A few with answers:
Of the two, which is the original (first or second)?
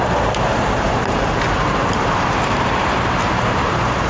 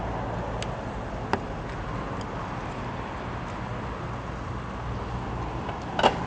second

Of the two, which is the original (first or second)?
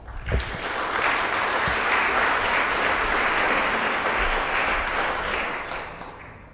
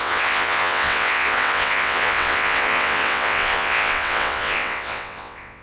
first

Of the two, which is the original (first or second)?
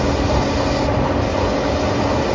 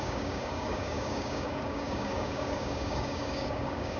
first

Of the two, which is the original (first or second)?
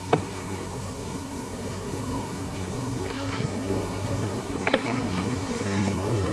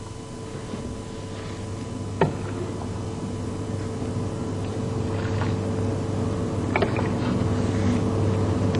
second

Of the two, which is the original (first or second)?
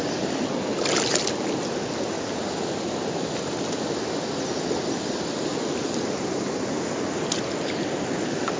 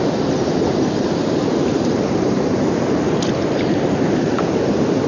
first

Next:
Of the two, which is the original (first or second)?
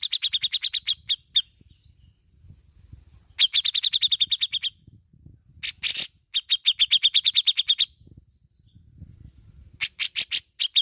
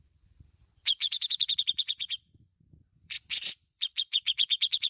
first